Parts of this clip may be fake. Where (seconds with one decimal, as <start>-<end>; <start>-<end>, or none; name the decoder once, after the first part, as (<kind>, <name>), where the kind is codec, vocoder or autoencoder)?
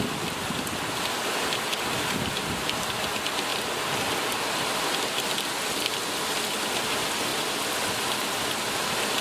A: 3.5-4.8 (vocoder, BigVGAN v2)